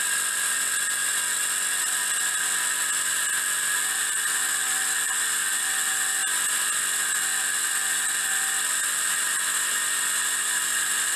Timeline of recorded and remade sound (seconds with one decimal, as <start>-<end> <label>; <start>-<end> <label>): 0.0-11.2 recorded